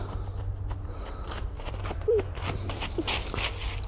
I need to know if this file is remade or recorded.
recorded